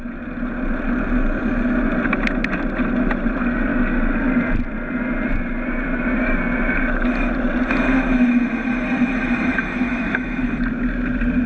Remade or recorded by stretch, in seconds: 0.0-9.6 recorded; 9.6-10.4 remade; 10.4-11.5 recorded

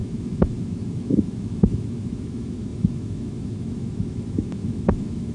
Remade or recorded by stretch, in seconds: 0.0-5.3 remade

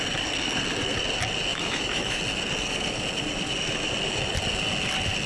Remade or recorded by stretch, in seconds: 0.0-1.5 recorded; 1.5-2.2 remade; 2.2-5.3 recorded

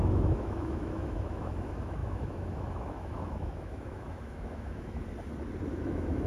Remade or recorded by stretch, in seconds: 0.0-5.0 remade; 5.0-5.7 recorded; 5.7-6.3 remade

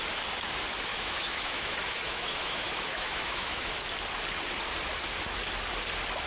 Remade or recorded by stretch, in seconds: 0.0-0.9 recorded; 0.9-3.7 remade; 3.7-6.3 recorded

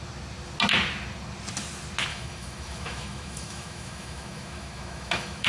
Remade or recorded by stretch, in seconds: 0.0-2.1 recorded; 2.1-5.5 remade